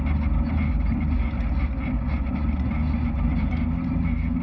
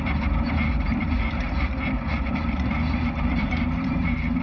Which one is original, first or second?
first